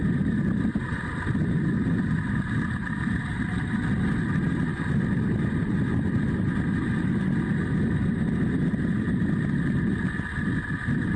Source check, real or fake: real